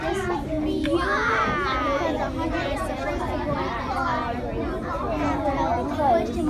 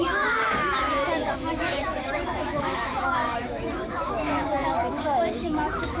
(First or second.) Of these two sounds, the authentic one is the first